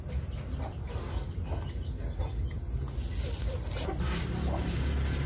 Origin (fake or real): real